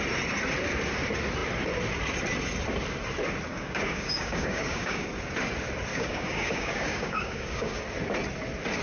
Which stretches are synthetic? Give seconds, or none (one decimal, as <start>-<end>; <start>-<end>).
3.5-5.1; 5.9-7.8